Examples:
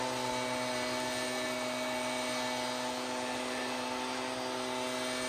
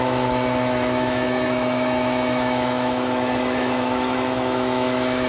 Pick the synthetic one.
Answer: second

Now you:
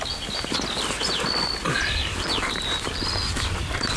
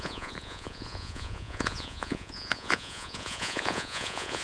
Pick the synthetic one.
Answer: second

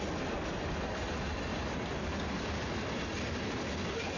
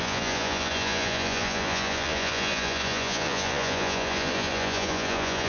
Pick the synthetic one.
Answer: second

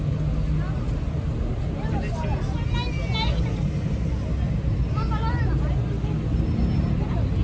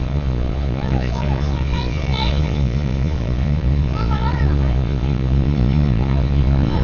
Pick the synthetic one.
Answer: second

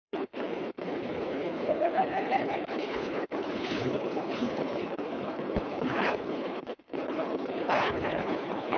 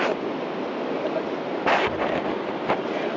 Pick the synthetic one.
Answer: first